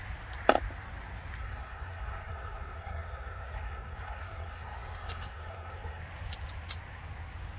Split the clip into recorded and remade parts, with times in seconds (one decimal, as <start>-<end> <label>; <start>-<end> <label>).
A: 0.0-1.4 recorded; 1.4-6.0 remade; 6.0-7.6 recorded